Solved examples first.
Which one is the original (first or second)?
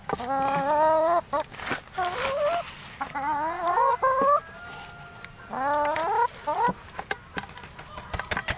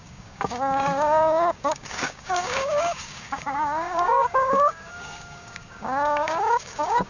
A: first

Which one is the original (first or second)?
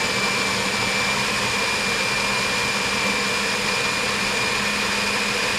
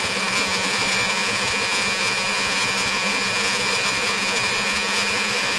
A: first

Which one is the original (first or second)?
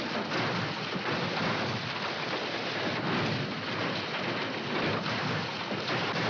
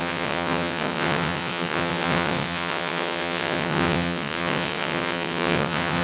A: first